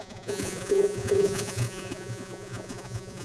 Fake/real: fake